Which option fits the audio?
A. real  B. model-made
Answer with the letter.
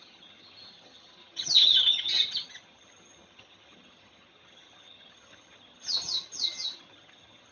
B